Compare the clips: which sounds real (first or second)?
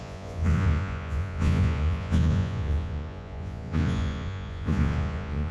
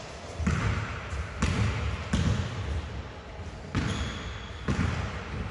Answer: second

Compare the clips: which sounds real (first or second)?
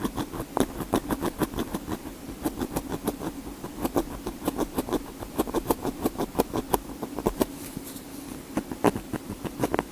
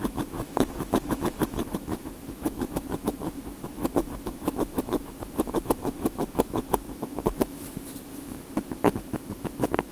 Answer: first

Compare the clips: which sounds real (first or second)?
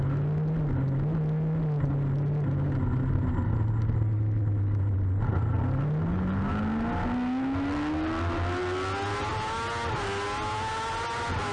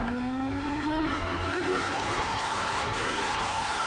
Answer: first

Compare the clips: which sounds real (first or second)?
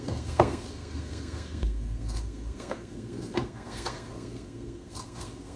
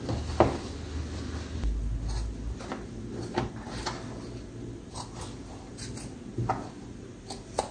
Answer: second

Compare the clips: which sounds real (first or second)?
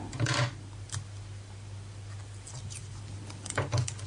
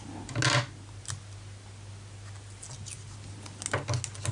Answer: second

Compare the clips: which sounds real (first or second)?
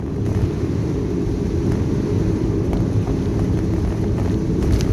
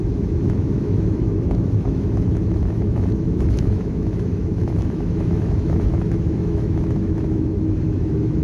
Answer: first